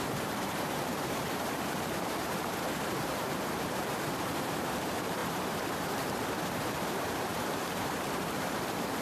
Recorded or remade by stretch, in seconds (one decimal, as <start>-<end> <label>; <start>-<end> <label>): 0.0-9.0 remade